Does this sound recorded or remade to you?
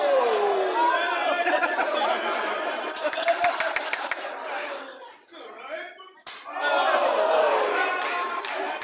remade